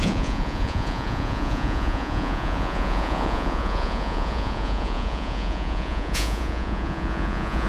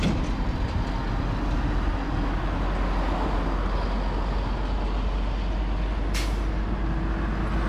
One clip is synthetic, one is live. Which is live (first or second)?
second